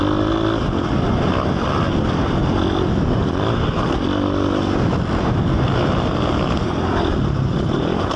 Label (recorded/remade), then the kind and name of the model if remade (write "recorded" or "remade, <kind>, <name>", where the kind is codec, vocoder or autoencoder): recorded